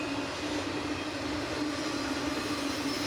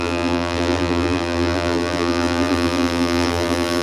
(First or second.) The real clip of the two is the first